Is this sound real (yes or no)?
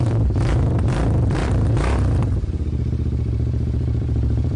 no